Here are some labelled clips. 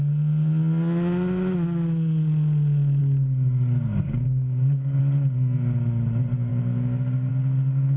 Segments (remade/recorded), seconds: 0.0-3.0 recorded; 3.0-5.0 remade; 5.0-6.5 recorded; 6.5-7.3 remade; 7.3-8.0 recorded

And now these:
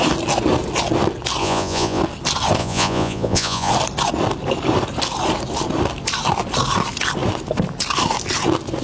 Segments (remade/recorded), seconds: 0.0-1.4 recorded; 1.4-2.0 remade; 2.0-2.6 recorded; 2.6-3.7 remade; 3.7-8.8 recorded

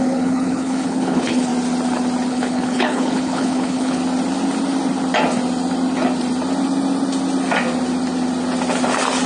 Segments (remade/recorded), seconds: 0.0-1.5 remade; 1.5-2.3 recorded; 2.3-4.0 remade; 4.0-9.3 recorded

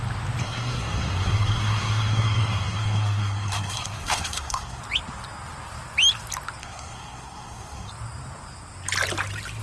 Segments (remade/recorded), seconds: 0.0-0.4 recorded; 0.4-4.8 remade; 4.8-6.6 recorded; 6.6-7.9 remade; 7.9-9.6 recorded

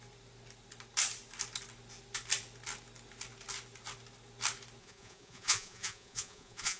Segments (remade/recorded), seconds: 0.0-4.8 recorded; 4.8-6.8 remade

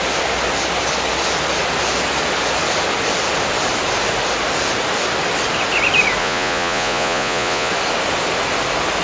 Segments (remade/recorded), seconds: 0.0-6.2 recorded; 6.2-7.7 remade; 7.7-9.0 recorded

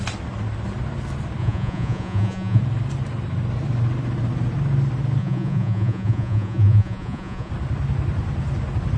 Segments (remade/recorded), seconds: 0.0-1.4 recorded; 1.4-2.6 remade; 2.6-5.2 recorded; 5.2-7.5 remade; 7.5-9.0 recorded

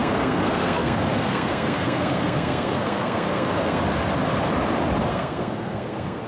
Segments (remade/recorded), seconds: 0.0-3.8 remade; 3.8-5.1 recorded; 5.1-6.3 remade